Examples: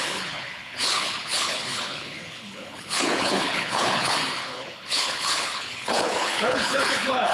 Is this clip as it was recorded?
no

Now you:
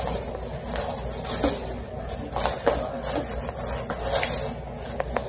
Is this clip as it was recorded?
yes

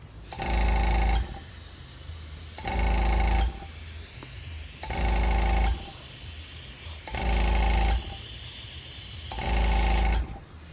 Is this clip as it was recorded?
yes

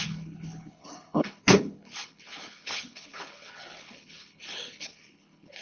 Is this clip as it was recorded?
no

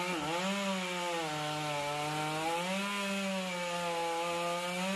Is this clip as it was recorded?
yes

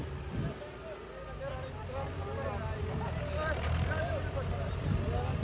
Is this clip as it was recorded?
yes